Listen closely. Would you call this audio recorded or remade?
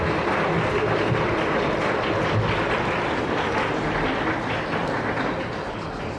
recorded